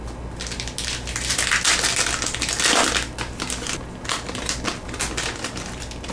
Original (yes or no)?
yes